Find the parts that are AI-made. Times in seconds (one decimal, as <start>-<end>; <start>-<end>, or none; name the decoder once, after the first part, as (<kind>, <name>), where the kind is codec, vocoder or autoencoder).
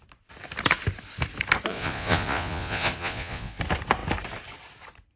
1.7-3.6 (vocoder, Vocos)